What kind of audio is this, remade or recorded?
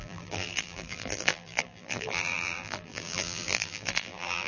remade